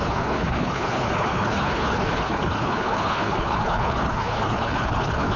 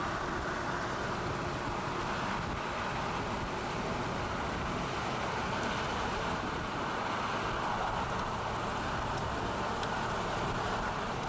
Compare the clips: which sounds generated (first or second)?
first